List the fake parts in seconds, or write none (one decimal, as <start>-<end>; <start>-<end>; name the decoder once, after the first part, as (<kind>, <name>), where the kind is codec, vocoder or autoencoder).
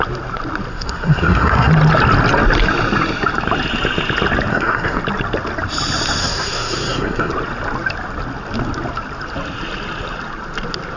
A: 0.7-1.7 (codec, SNAC); 4.5-5.0; 6.2-7.3